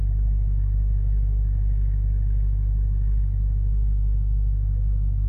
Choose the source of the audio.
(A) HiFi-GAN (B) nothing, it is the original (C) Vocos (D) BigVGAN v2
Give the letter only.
B